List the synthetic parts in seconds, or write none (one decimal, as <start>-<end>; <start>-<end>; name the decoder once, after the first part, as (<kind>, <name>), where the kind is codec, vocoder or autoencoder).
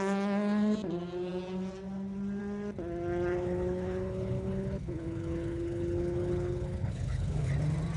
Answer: 3.3-7.5 (codec, HILCodec)